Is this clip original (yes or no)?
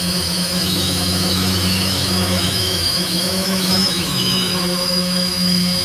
no